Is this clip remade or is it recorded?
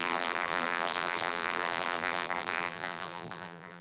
remade